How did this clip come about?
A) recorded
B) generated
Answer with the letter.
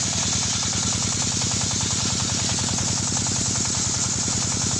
A